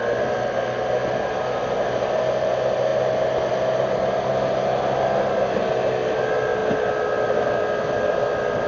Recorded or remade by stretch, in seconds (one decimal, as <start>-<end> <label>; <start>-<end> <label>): 0.0-8.7 recorded